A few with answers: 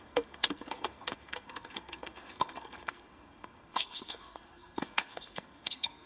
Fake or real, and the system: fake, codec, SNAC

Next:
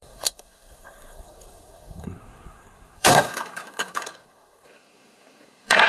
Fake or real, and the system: fake, codec, SNAC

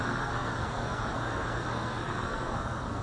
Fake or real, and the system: fake, codec, SNAC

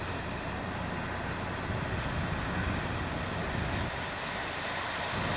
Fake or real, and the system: real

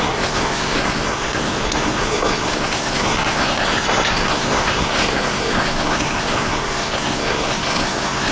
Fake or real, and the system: fake, codec, SNAC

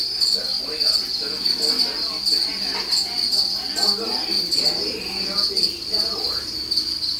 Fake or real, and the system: real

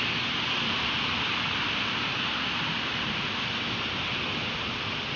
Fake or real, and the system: real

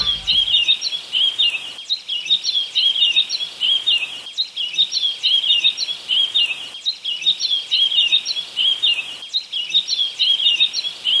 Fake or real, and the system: real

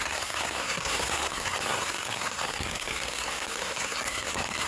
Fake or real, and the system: fake, codec, SNAC